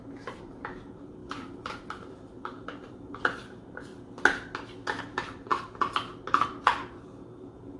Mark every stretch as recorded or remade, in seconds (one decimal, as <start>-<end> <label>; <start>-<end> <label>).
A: 0.0-3.9 remade; 3.9-5.0 recorded; 5.0-5.5 remade; 5.5-6.4 recorded; 6.4-7.8 remade